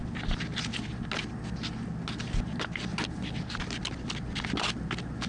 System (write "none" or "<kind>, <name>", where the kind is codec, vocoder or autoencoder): none